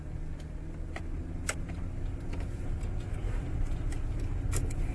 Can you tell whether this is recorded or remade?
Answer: recorded